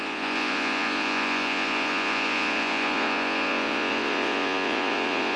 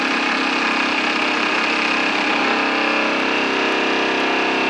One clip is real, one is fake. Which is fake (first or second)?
first